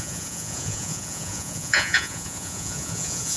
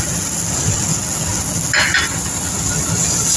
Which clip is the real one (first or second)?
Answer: second